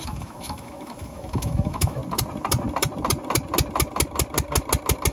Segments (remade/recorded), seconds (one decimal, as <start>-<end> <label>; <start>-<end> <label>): 0.0-2.0 remade; 2.0-5.1 recorded